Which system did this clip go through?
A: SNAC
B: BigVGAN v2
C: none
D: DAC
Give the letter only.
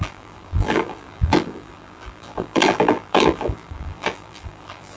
B